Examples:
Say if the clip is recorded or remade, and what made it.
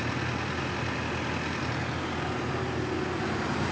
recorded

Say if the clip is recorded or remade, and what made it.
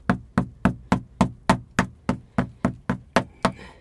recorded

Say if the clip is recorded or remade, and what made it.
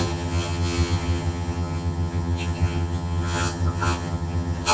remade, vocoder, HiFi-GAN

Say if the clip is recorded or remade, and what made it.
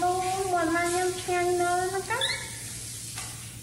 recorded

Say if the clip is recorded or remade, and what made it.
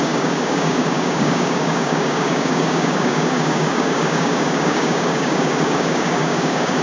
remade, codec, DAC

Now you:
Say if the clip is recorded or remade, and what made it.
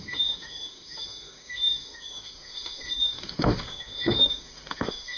remade, autoencoder, DAC-VAE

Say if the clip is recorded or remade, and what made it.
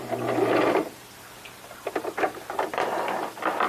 recorded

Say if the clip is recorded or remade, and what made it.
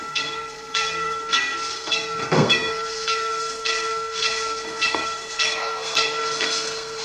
remade, codec, SNAC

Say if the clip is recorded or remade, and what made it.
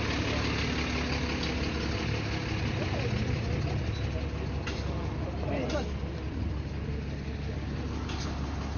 recorded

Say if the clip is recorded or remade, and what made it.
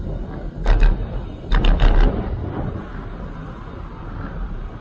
recorded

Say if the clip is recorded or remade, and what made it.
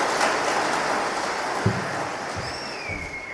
recorded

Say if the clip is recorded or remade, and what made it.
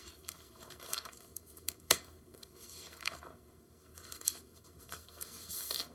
remade, codec, SNAC